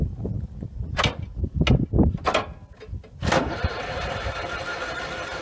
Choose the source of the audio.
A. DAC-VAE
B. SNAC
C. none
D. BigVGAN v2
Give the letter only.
C